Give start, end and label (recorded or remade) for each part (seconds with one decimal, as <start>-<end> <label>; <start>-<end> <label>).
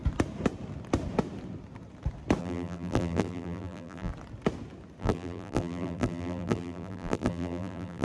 0.0-2.4 recorded; 2.4-4.1 remade; 4.1-5.0 recorded; 5.0-8.0 remade